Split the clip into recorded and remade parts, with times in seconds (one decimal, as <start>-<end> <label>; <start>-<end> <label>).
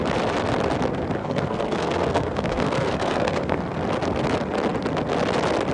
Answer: 0.0-1.2 recorded; 1.2-3.6 remade; 3.6-5.7 recorded